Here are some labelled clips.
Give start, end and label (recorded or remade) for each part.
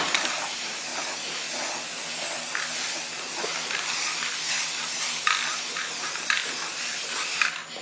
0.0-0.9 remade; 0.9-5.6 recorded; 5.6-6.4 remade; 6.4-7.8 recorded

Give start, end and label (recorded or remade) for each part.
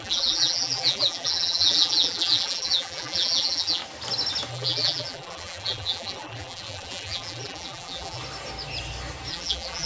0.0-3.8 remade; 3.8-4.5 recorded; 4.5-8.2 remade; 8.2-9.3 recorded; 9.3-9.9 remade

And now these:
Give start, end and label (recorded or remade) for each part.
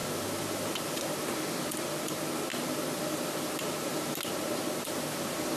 0.0-5.6 recorded